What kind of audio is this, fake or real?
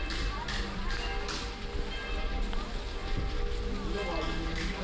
real